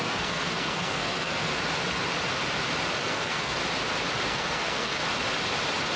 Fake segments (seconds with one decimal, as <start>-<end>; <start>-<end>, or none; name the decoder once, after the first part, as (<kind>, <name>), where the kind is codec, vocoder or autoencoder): 0.0-1.5 (codec, SNAC); 3.0-3.6; 4.2-5.0